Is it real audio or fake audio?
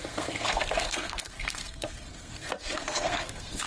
fake